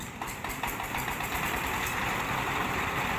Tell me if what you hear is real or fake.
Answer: fake